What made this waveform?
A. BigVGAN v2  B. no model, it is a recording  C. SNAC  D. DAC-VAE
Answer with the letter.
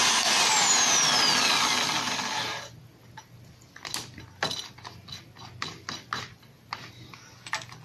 B